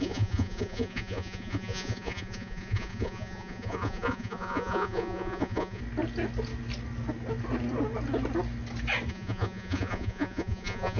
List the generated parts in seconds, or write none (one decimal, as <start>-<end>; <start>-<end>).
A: 0.0-5.8; 9.1-11.0